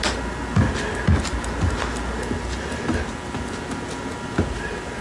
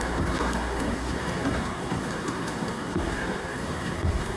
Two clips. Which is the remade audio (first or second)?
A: second